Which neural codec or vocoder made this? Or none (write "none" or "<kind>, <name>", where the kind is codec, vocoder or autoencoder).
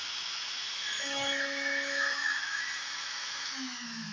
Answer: autoencoder, DAC-VAE